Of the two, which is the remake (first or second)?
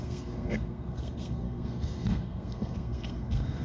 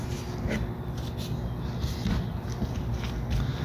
first